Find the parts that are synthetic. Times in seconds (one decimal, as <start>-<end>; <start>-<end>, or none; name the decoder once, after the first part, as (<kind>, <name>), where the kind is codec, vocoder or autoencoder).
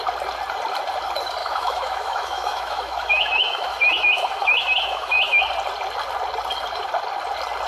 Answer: 1.4-5.4 (autoencoder, DAC-VAE)